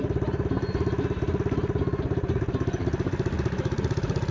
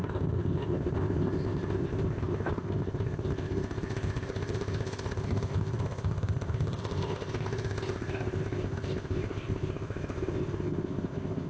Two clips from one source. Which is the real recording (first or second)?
first